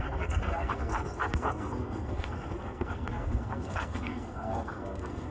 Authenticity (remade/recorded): remade